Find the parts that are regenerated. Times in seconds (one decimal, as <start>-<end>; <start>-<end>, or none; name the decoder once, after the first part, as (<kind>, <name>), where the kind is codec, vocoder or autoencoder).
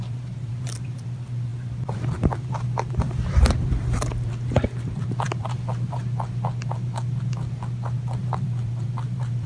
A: 0.0-6.0 (vocoder, BigVGAN v2); 8.2-9.5